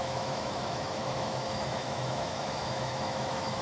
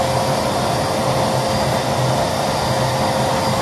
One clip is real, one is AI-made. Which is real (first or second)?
second